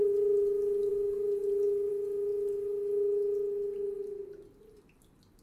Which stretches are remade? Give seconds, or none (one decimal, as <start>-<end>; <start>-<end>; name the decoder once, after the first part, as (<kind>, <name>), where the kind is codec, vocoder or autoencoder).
none